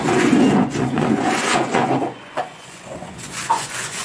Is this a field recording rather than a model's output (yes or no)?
no